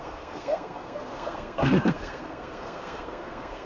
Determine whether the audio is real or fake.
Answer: fake